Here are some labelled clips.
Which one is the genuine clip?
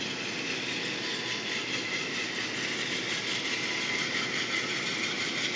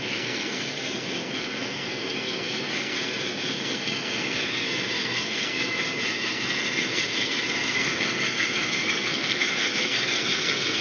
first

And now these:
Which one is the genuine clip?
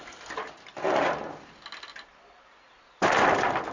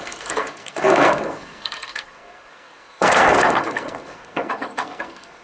first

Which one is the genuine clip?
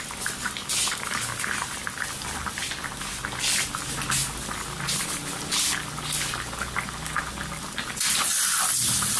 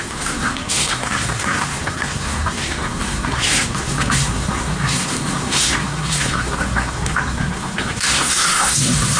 first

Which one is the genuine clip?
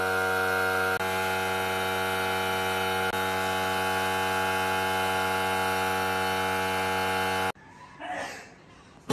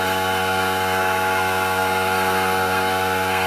first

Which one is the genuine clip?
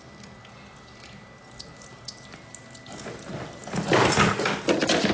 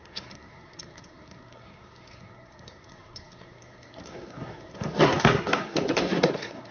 first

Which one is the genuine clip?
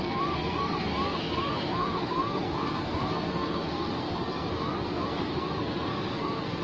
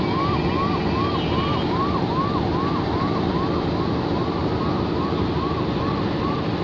second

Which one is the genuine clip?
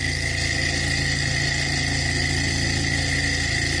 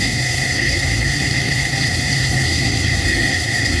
first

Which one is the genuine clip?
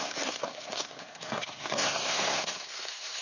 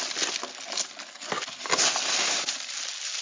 second